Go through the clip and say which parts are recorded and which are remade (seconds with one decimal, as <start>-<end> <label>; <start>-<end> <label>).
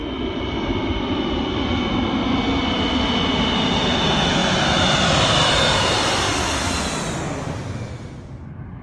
0.0-1.8 remade; 1.8-4.4 recorded; 4.4-6.3 remade; 6.3-8.8 recorded